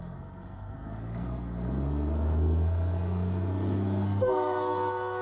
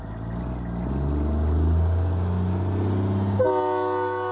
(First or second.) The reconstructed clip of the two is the first